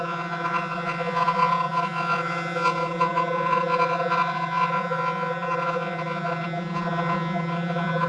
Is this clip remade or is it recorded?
remade